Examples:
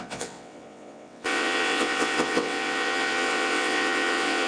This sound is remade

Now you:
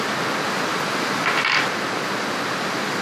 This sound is recorded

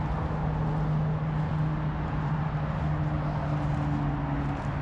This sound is recorded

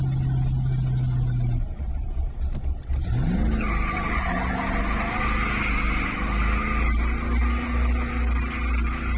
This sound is recorded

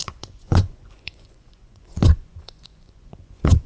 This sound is remade